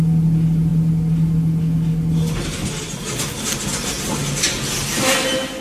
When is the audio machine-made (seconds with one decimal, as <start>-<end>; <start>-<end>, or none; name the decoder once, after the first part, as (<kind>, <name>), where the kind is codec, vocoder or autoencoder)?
none